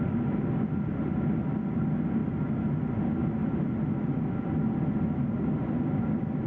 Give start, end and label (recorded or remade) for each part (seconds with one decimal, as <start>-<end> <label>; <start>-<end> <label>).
0.0-6.5 recorded